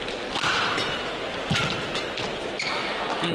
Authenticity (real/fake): real